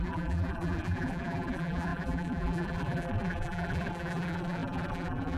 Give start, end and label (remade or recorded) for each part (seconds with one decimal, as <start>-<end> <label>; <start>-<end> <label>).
0.0-5.4 remade

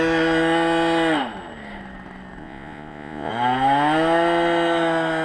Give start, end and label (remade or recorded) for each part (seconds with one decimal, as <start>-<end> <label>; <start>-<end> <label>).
0.0-2.4 recorded; 2.4-3.3 remade; 3.3-5.2 recorded

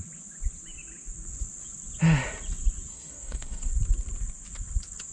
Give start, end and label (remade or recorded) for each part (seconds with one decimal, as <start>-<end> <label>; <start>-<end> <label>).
0.0-2.9 recorded; 2.9-3.7 remade; 3.7-5.1 recorded

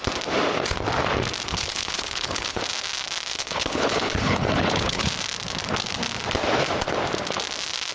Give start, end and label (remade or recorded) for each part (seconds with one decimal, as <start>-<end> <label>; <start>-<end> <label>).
0.0-1.5 recorded; 1.5-2.6 remade; 2.6-3.3 recorded; 3.3-5.1 remade; 5.1-7.9 recorded

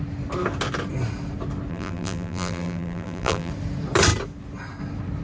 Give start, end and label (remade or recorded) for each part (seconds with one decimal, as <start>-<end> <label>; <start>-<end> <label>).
0.0-1.7 recorded; 1.7-3.5 remade; 3.5-5.2 recorded

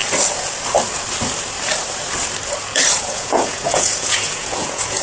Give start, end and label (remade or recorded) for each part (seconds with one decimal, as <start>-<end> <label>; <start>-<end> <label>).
0.0-3.0 recorded; 3.0-5.0 remade

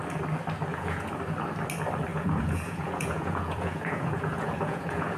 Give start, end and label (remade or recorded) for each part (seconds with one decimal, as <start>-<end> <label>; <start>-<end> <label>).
0.0-0.7 recorded; 0.7-1.2 remade; 1.2-2.1 recorded; 2.1-5.2 remade

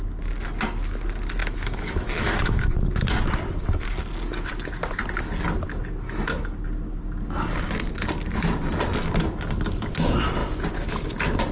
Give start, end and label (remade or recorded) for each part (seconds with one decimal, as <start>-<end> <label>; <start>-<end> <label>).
0.0-1.4 recorded; 1.4-2.7 remade; 2.7-11.5 recorded